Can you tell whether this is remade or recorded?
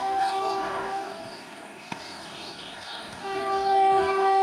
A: remade